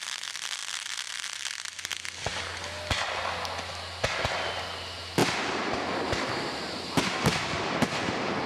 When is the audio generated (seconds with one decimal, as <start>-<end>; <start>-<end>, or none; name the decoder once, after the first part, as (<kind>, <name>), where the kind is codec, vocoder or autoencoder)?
5.2-8.5 (vocoder, BigVGAN v2)